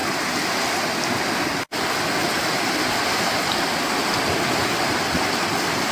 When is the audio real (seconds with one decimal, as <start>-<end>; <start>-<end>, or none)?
0.0-5.9